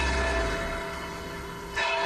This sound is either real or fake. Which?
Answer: fake